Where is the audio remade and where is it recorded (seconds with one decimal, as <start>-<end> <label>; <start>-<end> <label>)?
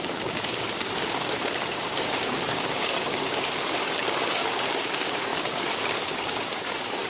0.0-7.1 remade